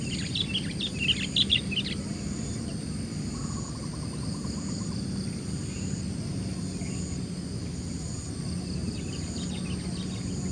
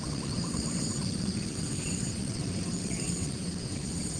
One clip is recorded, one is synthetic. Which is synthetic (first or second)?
second